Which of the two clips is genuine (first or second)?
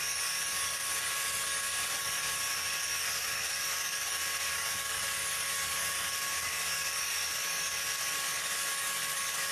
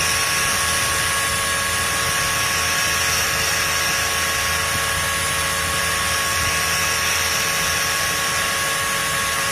second